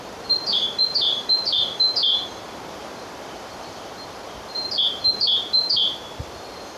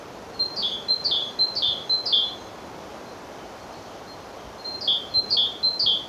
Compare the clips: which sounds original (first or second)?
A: second